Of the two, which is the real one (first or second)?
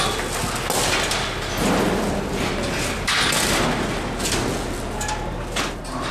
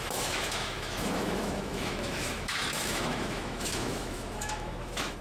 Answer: first